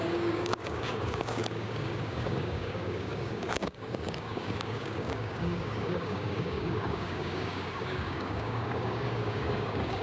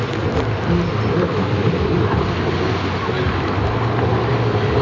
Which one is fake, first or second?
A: first